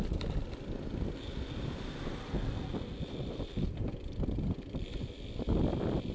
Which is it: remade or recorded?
recorded